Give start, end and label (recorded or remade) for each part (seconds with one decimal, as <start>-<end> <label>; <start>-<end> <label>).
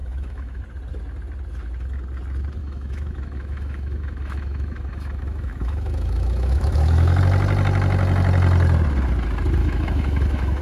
0.0-0.6 remade; 0.6-2.6 recorded; 2.6-7.2 remade; 7.2-9.6 recorded; 9.6-10.6 remade